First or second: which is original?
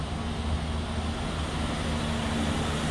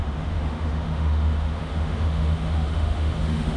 first